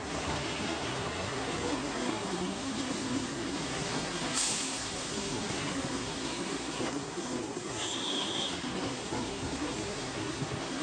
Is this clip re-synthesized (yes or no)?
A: yes